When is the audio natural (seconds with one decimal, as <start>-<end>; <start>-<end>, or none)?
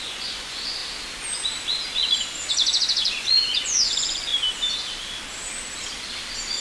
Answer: 0.8-2.5; 4.3-6.6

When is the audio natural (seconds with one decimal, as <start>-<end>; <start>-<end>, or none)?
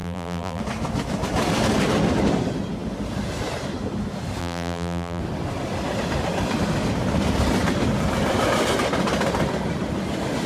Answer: 0.6-4.4; 5.2-10.5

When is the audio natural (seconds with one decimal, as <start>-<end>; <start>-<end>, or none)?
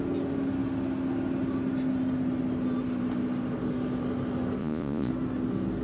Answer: 0.0-4.6; 5.1-5.8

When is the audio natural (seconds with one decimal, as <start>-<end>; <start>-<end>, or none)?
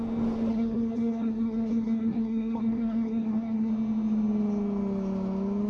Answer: 0.0-0.5; 3.7-5.7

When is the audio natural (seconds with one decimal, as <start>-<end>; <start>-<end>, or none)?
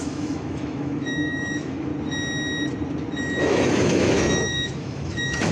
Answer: 1.9-3.4